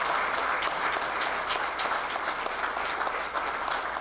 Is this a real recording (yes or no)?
yes